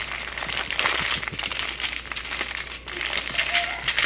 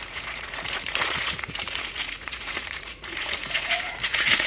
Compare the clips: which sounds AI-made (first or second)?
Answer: second